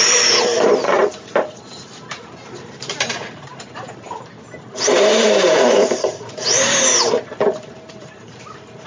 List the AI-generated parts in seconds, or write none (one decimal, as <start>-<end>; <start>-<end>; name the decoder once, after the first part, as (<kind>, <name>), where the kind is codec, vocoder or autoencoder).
0.0-8.9 (vocoder, BigVGAN v2)